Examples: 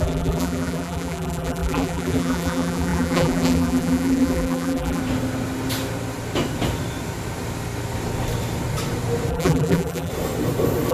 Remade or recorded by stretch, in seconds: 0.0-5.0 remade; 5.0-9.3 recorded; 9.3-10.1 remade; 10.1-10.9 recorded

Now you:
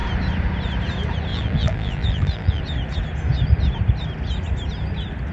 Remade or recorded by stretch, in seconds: 0.0-1.3 recorded; 1.3-2.6 remade; 2.6-5.3 recorded

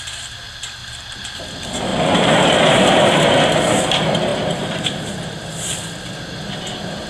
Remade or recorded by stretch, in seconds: 0.0-0.8 recorded; 0.8-1.4 remade; 1.4-1.9 recorded; 1.9-3.4 remade; 3.4-4.3 recorded; 4.3-5.5 remade; 5.5-7.1 recorded

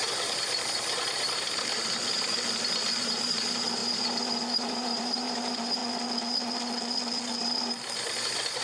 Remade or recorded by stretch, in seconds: 0.0-1.8 remade; 1.8-3.0 recorded; 3.0-3.8 remade; 3.8-4.6 recorded; 4.6-5.8 remade; 5.8-8.6 recorded